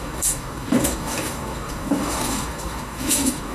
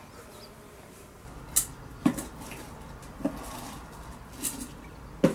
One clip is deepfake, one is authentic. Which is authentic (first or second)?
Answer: second